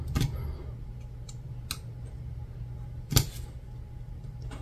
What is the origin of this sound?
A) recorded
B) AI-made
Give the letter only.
A